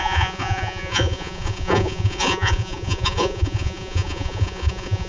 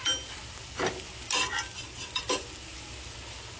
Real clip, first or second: second